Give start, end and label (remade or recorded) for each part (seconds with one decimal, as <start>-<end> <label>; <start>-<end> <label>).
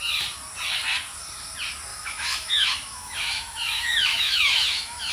0.0-1.9 recorded; 1.9-5.1 remade